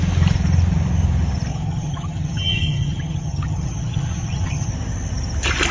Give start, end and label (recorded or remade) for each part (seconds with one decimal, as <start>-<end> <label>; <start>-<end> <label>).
0.0-1.5 recorded; 1.5-4.7 remade; 4.7-5.7 recorded

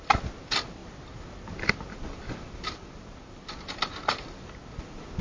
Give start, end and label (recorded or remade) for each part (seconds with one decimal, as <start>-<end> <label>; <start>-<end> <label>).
0.0-5.2 recorded

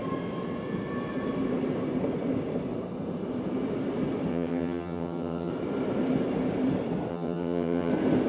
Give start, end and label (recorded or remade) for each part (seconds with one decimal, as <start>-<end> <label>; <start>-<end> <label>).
0.0-4.3 recorded; 4.3-5.5 remade; 5.5-7.1 recorded; 7.1-7.9 remade; 7.9-8.3 recorded

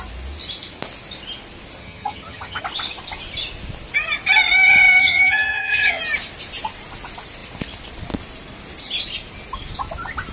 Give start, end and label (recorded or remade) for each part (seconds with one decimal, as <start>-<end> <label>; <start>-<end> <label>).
0.0-1.8 recorded; 1.8-2.6 remade; 2.6-5.0 recorded; 5.0-6.0 remade; 6.0-10.3 recorded